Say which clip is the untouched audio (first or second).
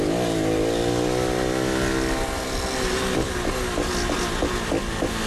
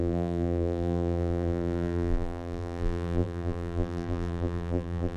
first